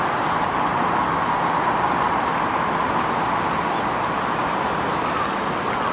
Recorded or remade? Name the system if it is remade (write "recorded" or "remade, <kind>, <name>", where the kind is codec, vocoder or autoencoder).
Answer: recorded